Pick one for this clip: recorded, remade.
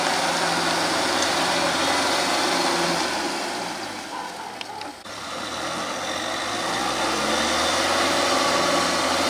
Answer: recorded